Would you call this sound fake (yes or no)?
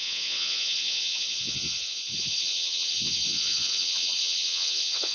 yes